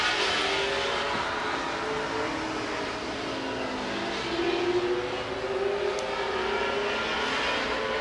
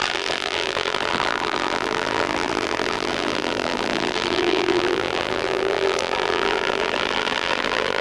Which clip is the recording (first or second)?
first